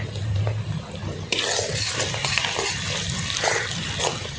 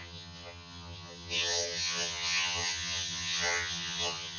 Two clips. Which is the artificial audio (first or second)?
second